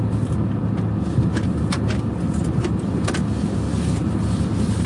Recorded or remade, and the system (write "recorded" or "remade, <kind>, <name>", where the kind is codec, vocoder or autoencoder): recorded